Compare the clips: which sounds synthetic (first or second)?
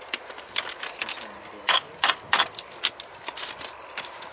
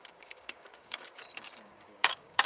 second